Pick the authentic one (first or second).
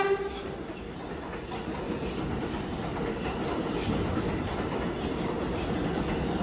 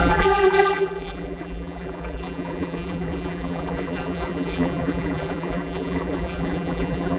first